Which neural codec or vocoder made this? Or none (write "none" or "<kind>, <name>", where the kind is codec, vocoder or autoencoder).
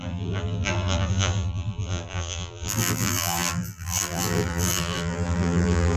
vocoder, BigVGAN v2